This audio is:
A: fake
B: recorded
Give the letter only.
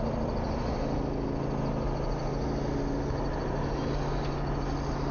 B